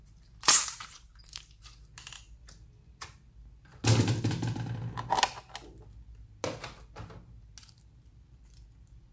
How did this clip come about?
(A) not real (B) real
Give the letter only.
B